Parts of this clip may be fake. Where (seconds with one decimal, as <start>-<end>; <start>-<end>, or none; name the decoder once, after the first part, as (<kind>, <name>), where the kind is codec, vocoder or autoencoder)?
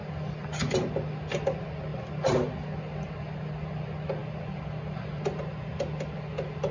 none